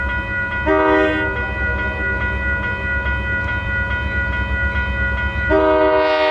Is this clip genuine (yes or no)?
yes